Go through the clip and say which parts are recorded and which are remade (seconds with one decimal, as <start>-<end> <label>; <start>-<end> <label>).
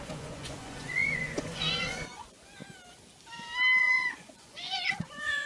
0.0-2.6 remade; 2.6-3.8 recorded; 3.8-5.5 remade